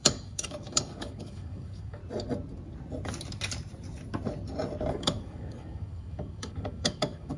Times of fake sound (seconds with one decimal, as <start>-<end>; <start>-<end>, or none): 0.0-2.0; 4.9-7.4